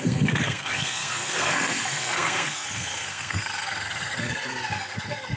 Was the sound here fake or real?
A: fake